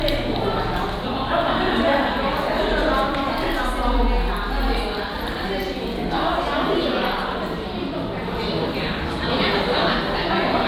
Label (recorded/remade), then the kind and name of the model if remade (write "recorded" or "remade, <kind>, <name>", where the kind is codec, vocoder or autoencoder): recorded